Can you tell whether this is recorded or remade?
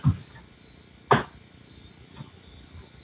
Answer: recorded